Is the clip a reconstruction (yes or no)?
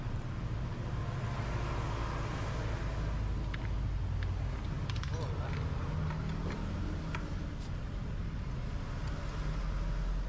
no